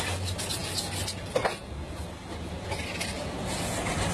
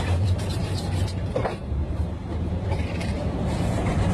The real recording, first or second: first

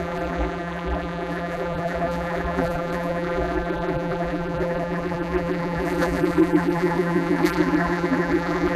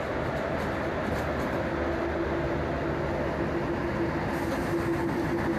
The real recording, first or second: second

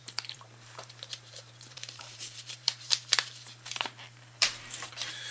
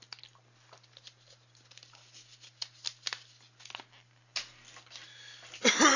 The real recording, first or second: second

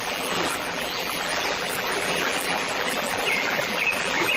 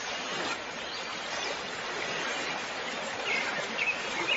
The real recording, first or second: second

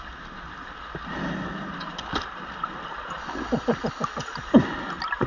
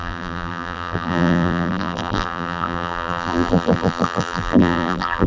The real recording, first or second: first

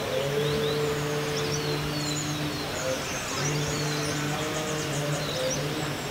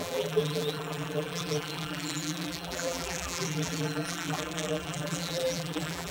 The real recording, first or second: first